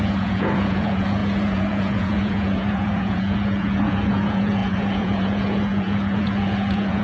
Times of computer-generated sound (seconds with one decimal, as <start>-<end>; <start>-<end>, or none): 0.0-7.0